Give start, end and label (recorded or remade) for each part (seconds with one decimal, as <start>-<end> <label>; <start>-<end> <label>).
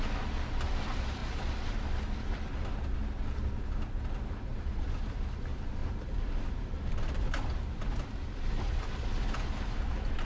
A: 0.0-4.5 recorded; 4.5-5.2 remade; 5.2-5.8 recorded; 5.8-7.2 remade; 7.2-10.3 recorded